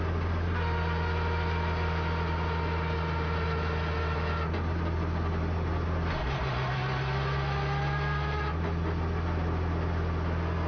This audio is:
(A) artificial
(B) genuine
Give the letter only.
B